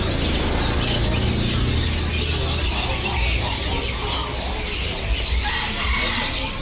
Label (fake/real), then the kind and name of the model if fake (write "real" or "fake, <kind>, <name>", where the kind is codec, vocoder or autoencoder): real